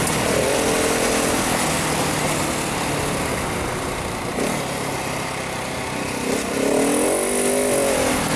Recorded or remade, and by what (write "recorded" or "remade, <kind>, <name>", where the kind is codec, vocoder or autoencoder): recorded